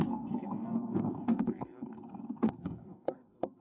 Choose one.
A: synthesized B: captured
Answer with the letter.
A